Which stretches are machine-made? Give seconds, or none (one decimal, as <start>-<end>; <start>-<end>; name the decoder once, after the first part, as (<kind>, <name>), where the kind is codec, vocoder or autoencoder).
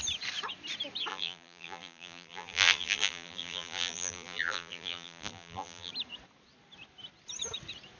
1.1-5.9 (vocoder, BigVGAN v2)